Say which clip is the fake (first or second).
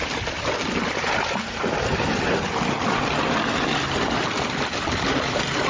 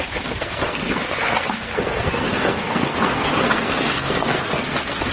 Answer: second